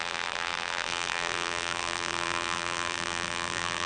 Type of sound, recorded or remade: remade